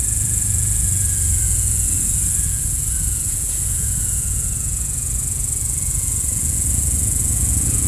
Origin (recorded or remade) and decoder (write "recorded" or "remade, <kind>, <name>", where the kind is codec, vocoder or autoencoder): remade, vocoder, Vocos